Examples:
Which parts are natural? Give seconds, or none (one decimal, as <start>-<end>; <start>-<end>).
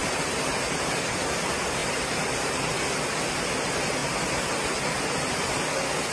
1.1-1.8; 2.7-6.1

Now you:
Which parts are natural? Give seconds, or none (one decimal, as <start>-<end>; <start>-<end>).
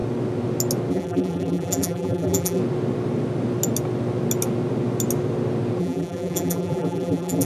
0.0-0.9; 2.6-5.8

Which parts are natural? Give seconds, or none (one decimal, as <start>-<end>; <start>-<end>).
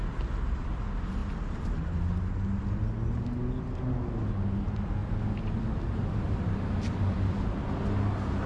0.0-5.0; 7.7-8.5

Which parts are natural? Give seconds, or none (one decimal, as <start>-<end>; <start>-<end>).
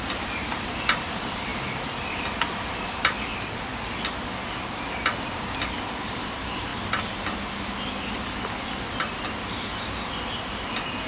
3.3-6.0; 6.7-9.0